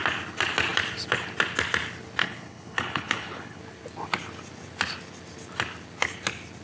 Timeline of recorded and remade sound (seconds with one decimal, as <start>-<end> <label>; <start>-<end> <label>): 0.0-2.2 recorded; 2.2-3.6 remade; 3.6-6.6 recorded